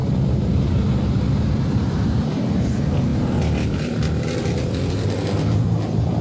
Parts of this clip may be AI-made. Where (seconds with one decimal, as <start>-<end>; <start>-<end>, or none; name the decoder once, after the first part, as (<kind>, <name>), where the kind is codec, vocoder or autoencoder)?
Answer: 1.6-3.1 (vocoder, BigVGAN v2)